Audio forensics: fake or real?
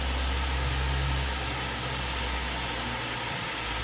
real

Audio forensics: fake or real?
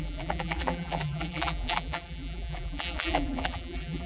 fake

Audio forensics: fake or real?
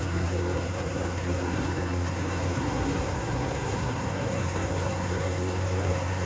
fake